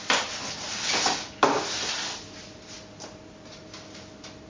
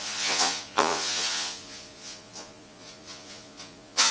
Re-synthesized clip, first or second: second